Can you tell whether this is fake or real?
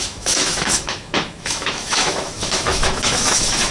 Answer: fake